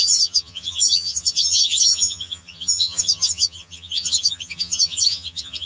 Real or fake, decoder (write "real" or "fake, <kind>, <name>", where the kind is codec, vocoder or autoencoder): fake, vocoder, HiFi-GAN